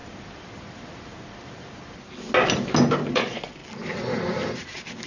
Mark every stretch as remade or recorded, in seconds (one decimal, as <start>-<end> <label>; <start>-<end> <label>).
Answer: 0.0-3.1 recorded; 3.1-3.6 remade; 3.6-5.1 recorded

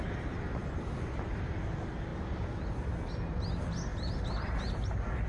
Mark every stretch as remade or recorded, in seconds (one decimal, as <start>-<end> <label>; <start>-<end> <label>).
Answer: 0.0-0.6 recorded; 0.6-1.5 remade; 1.5-3.9 recorded; 3.9-4.6 remade; 4.6-5.3 recorded

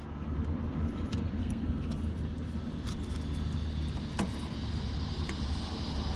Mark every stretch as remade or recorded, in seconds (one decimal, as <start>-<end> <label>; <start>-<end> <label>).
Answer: 0.0-1.4 recorded; 1.4-2.0 remade; 2.0-6.2 recorded

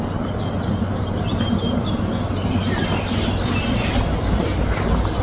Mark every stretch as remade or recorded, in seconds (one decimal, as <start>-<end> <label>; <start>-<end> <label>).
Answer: 0.0-5.2 recorded

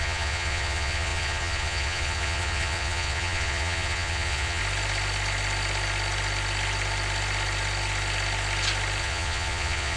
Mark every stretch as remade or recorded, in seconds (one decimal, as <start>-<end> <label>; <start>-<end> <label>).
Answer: 0.0-4.6 remade; 4.6-9.0 recorded; 9.0-10.0 remade

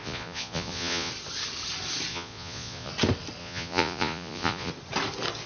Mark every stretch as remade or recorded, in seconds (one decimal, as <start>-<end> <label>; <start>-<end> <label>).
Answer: 0.0-1.1 remade; 1.1-2.1 recorded; 2.1-2.9 remade; 2.9-3.4 recorded; 3.4-4.7 remade; 4.7-5.5 recorded

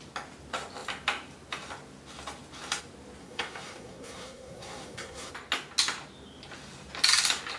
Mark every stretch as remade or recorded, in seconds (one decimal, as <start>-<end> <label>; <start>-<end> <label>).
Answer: 0.0-3.2 recorded; 3.2-5.3 remade; 5.3-7.6 recorded

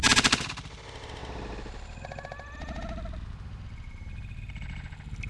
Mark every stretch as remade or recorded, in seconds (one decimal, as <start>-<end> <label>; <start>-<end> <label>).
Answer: 0.0-5.3 recorded